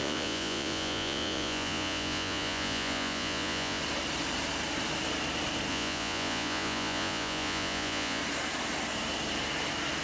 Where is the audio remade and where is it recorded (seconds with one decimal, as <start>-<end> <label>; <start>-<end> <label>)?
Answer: 0.0-3.8 remade; 3.8-5.7 recorded; 5.7-8.2 remade; 8.2-10.0 recorded